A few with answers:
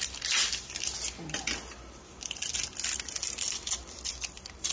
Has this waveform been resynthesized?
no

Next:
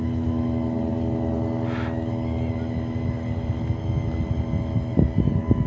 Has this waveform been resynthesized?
no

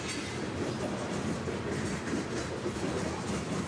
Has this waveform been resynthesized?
no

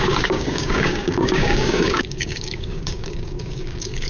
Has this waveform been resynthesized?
yes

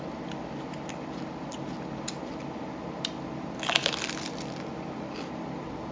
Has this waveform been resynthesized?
no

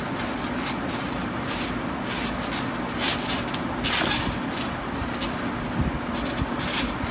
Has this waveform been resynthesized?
no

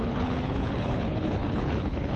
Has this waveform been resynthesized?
yes